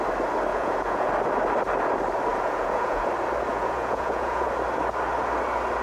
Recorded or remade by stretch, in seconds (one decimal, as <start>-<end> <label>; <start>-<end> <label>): 0.0-0.5 recorded; 0.5-1.1 remade; 1.1-2.3 recorded; 2.3-3.1 remade; 3.1-3.5 recorded; 3.5-4.5 remade; 4.5-5.8 recorded